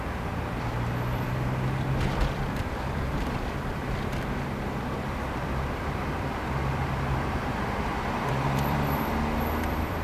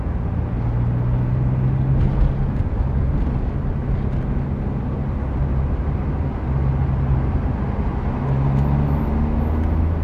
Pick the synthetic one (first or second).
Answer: first